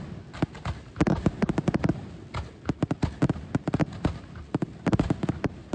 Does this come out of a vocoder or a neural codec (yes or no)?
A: no